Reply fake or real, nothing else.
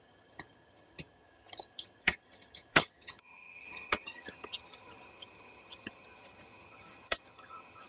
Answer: fake